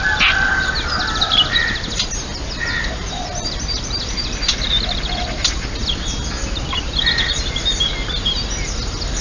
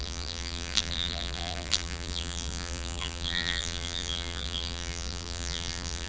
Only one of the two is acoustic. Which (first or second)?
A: first